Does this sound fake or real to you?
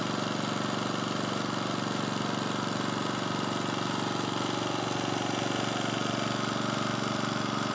real